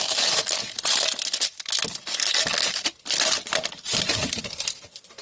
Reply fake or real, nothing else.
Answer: real